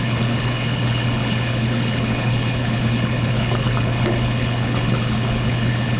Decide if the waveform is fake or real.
fake